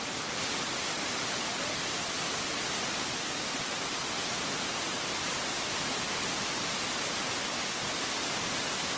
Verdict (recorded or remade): recorded